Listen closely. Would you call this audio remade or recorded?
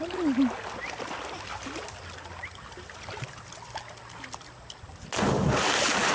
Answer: recorded